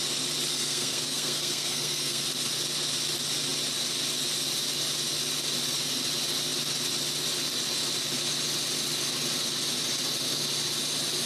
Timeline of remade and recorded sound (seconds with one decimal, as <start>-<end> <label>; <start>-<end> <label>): 0.0-0.5 recorded; 0.5-2.2 remade; 2.2-11.2 recorded